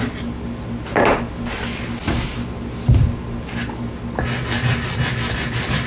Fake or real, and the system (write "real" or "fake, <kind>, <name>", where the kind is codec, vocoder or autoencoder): real